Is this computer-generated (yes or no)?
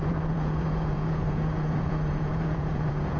yes